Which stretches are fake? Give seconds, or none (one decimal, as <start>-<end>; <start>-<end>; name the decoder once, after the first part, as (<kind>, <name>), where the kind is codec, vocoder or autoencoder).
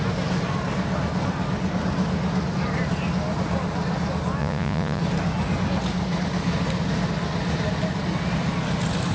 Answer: 4.4-5.0 (vocoder, Vocos)